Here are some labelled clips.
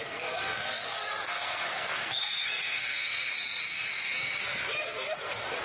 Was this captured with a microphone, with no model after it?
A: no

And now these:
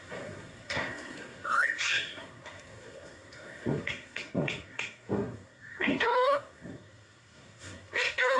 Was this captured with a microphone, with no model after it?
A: no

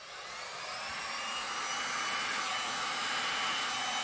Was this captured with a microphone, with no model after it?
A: yes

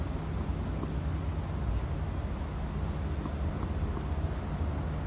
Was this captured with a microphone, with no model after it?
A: yes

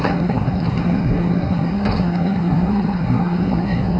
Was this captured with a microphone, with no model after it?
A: no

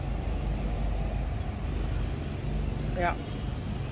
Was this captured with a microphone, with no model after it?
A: yes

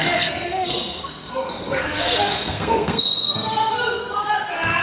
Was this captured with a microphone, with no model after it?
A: no